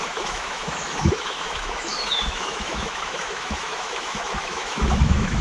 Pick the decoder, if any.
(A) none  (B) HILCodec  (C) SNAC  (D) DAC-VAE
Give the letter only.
D